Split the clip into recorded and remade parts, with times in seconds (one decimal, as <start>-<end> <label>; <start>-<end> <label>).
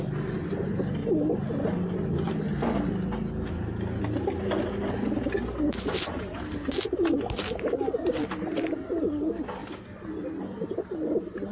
0.0-11.5 recorded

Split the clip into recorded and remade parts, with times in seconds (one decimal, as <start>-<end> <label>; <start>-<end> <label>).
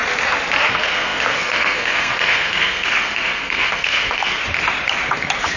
0.0-0.7 recorded; 0.7-4.4 remade; 4.4-5.6 recorded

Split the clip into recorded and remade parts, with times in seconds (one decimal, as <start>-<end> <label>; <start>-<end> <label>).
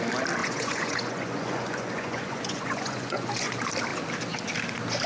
0.0-0.4 recorded; 0.4-3.5 remade; 3.5-5.1 recorded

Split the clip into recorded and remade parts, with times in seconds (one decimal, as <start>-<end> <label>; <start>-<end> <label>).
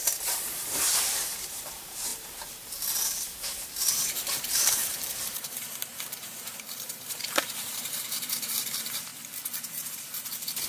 0.0-2.1 remade; 2.1-3.9 recorded; 3.9-9.1 remade; 9.1-9.7 recorded; 9.7-10.7 remade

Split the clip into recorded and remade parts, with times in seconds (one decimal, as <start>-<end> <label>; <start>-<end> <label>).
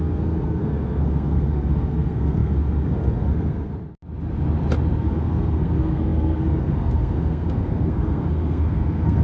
0.0-3.7 remade; 3.7-5.0 recorded; 5.0-9.2 remade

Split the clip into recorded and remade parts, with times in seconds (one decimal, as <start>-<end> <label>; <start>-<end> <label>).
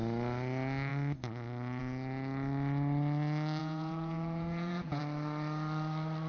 0.0-3.6 recorded; 3.6-5.0 remade; 5.0-6.3 recorded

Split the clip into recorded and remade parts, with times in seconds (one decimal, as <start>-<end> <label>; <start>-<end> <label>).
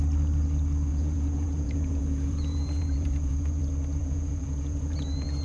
0.0-0.9 recorded; 0.9-3.6 remade; 3.6-4.0 recorded; 4.0-5.4 remade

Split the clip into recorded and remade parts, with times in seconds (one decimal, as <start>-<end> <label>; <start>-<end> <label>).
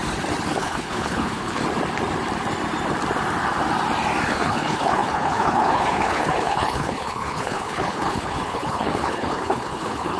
0.0-0.6 recorded; 0.6-1.6 remade; 1.6-4.3 recorded; 4.3-10.2 remade